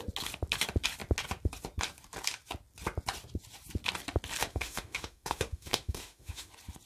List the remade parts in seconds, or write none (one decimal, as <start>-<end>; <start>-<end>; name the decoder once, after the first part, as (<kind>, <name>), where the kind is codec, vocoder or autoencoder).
4.4-6.5 (autoencoder, DAC-VAE)